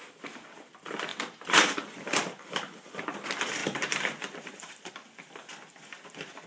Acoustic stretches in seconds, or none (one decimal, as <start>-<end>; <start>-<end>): 0.0-1.1; 1.7-3.6; 4.9-6.5